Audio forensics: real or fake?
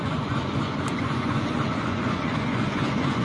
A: fake